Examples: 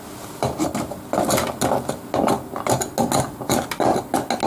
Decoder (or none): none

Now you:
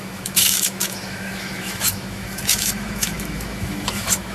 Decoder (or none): autoencoder, DAC-VAE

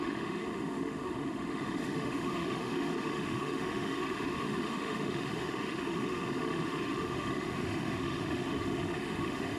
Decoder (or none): autoencoder, DAC-VAE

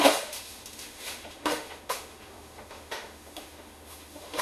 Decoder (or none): autoencoder, DAC-VAE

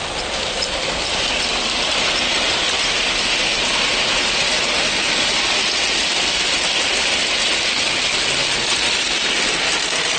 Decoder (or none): none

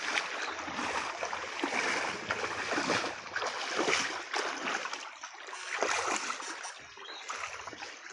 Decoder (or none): none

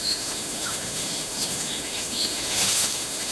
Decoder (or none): autoencoder, DAC-VAE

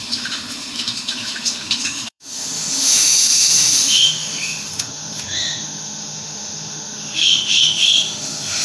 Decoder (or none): autoencoder, DAC-VAE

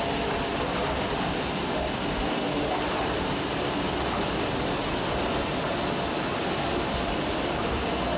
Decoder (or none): none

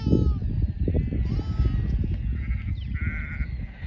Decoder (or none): none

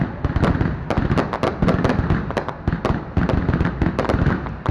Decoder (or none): none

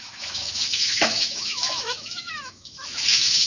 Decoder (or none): autoencoder, DAC-VAE